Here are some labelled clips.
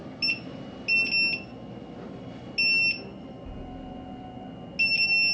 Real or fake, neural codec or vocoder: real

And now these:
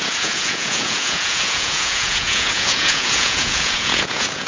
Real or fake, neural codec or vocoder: fake, vocoder, Vocos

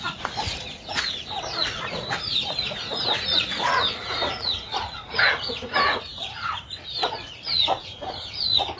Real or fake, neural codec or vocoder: fake, vocoder, Vocos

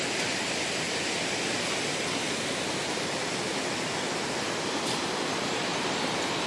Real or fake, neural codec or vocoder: real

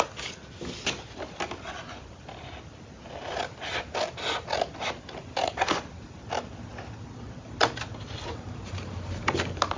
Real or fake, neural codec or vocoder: real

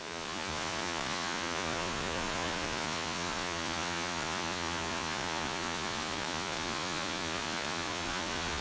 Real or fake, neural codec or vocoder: fake, vocoder, Vocos